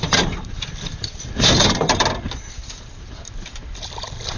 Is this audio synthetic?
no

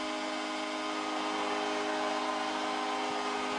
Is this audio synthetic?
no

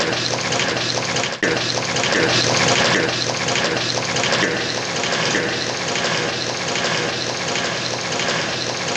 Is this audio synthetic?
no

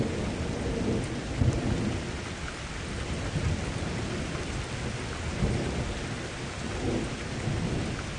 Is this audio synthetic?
no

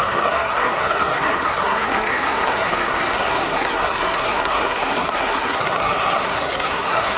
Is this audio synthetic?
yes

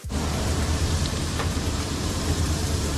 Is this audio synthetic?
yes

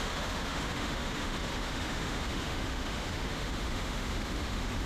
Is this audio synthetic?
yes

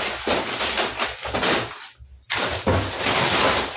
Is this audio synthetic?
no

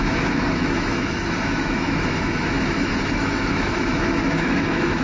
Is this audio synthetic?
yes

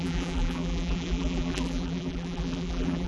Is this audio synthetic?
yes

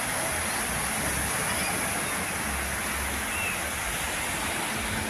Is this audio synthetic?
no